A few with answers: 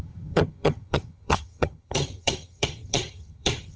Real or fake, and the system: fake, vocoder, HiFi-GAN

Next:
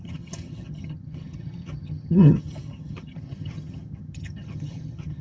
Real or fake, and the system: fake, vocoder, HiFi-GAN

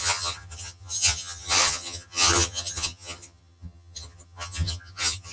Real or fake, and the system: fake, vocoder, HiFi-GAN